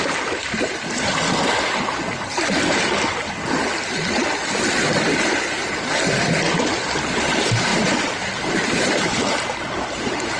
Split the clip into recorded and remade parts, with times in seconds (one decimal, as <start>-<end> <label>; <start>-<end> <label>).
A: 0.0-0.4 remade; 0.4-4.9 recorded; 4.9-5.6 remade; 5.6-7.3 recorded; 7.3-10.4 remade

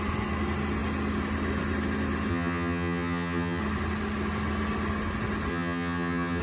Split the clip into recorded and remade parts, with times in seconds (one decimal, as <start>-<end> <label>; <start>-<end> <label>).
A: 0.0-2.3 recorded; 2.3-3.6 remade; 3.6-5.5 recorded; 5.5-6.4 remade

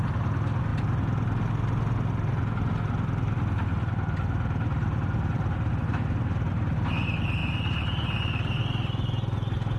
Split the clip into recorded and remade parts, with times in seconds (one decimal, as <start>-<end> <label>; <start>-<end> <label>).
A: 0.0-9.8 recorded

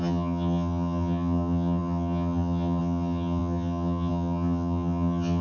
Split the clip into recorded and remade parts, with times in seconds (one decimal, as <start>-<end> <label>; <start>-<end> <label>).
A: 0.0-5.4 remade